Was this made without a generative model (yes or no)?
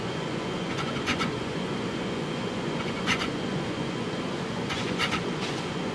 no